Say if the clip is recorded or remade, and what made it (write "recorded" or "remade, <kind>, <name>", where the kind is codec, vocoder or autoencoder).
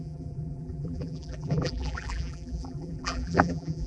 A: remade, vocoder, BigVGAN v2